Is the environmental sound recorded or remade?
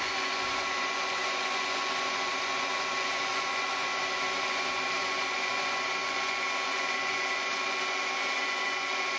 remade